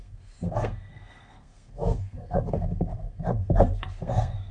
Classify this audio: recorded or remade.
remade